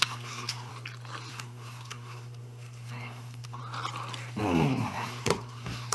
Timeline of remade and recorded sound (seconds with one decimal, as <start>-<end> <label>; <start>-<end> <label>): 0.0-0.7 remade; 0.7-1.3 recorded; 1.3-3.6 remade; 3.6-4.4 recorded; 4.4-5.9 remade